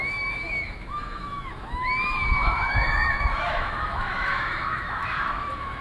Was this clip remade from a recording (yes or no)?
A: yes